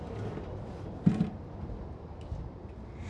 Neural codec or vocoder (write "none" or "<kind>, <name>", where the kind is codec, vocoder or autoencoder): none